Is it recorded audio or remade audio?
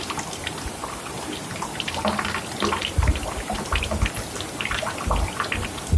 recorded